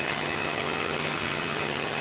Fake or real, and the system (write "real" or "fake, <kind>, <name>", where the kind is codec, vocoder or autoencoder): fake, vocoder, HiFi-GAN